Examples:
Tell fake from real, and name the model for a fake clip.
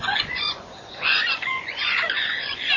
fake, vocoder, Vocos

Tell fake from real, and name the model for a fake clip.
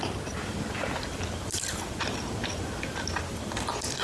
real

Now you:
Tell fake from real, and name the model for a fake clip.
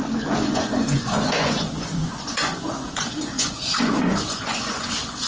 fake, vocoder, Vocos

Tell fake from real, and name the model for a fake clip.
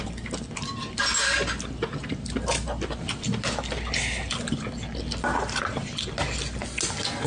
real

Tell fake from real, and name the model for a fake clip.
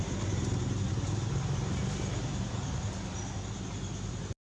real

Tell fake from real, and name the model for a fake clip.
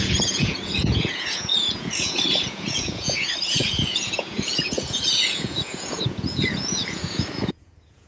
fake, vocoder, Vocos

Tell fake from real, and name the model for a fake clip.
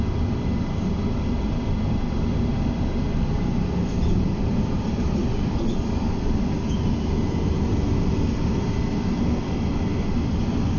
real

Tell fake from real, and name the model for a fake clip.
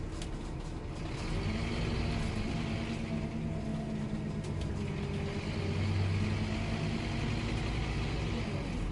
real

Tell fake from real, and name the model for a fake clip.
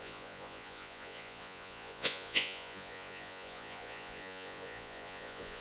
fake, vocoder, Vocos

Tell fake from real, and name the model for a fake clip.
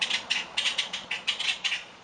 fake, vocoder, Vocos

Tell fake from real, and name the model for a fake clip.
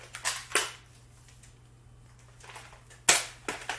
real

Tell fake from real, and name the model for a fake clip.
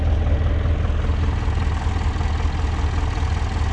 real